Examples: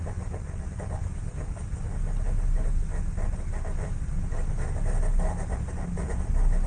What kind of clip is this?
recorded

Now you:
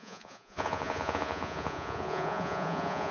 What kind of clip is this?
remade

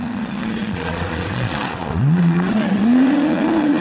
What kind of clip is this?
remade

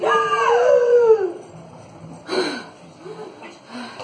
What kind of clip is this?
recorded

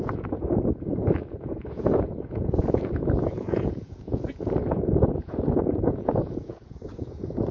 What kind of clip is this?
remade